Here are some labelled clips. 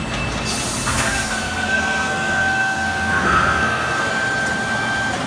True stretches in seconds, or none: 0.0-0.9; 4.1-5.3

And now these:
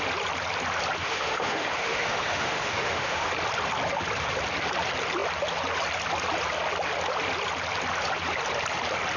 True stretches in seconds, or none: 0.0-1.0; 3.3-9.2

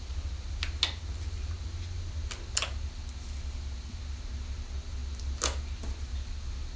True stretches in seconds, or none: 0.0-6.8